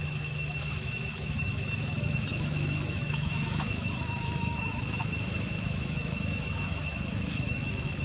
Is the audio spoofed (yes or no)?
yes